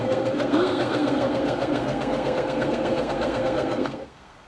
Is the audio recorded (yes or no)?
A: no